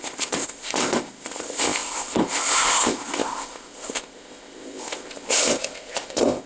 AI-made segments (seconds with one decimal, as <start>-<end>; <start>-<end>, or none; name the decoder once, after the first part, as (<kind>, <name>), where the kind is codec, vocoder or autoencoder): 0.0-6.5 (codec, ZipCodec)